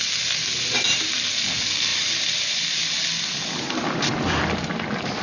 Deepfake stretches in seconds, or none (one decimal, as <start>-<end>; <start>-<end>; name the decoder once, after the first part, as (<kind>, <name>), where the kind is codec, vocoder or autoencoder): 1.9-5.2 (vocoder, BigVGAN v2)